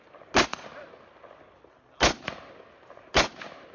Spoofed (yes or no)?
no